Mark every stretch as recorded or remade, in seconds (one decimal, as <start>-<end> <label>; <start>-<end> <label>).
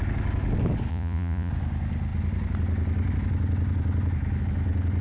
0.0-0.9 recorded; 0.9-1.5 remade; 1.5-5.0 recorded